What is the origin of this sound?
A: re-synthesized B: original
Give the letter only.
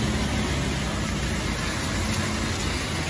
B